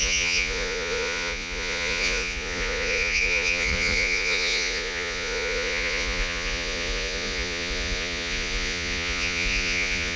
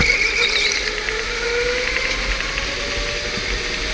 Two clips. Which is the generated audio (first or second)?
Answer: first